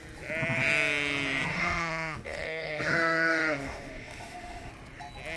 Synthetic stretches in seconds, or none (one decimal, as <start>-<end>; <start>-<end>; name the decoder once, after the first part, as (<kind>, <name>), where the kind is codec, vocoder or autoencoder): 1.5-4.7 (autoencoder, DAC-VAE)